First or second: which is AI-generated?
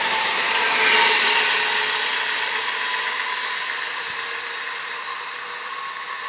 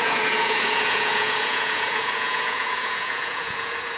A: second